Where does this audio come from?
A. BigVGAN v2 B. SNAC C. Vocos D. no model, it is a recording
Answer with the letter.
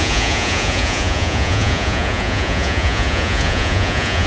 C